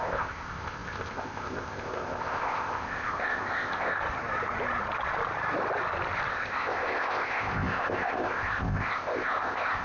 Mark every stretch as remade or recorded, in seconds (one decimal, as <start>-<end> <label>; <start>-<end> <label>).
0.0-4.0 remade; 4.0-6.3 recorded; 6.3-9.8 remade